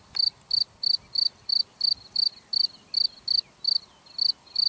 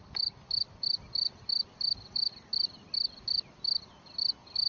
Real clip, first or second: first